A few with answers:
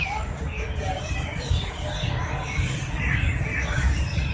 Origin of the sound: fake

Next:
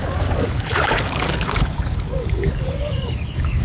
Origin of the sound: fake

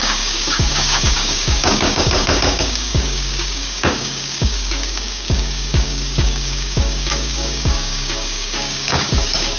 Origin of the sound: fake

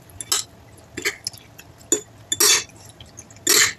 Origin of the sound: real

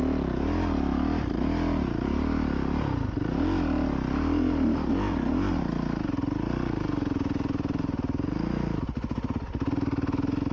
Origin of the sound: real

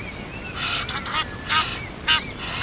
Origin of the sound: real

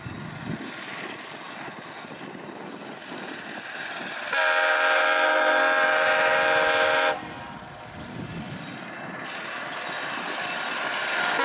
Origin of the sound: real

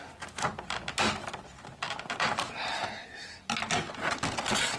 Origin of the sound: real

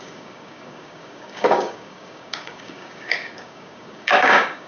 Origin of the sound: fake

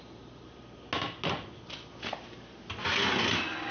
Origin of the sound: real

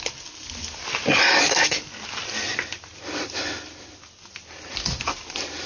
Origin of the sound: real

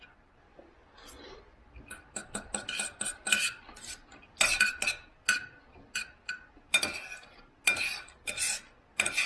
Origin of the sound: real